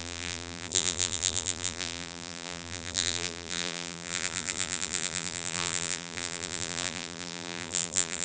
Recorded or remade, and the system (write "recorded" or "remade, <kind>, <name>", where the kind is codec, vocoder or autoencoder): remade, vocoder, BigVGAN v2